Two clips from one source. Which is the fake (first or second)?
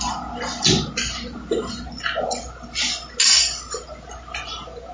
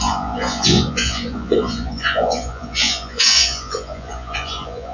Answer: second